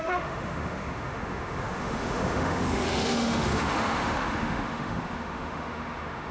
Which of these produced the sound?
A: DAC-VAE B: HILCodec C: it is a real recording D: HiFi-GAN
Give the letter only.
A